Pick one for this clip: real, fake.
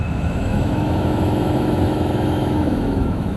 fake